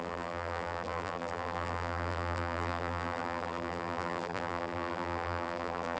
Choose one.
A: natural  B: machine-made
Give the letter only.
B